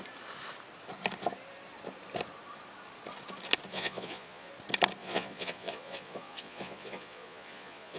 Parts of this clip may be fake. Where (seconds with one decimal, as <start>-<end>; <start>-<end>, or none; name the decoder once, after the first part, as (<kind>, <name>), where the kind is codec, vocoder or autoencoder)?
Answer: 3.7-4.5 (vocoder, Vocos); 5.0-8.0